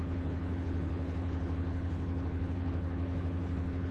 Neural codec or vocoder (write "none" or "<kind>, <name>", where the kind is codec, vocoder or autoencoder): codec, HILCodec